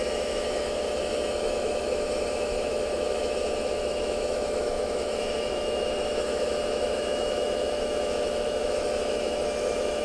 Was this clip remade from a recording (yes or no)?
yes